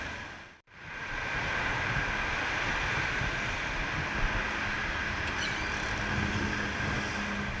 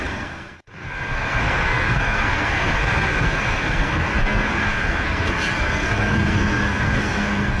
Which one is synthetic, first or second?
second